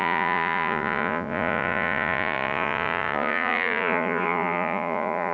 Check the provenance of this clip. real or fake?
fake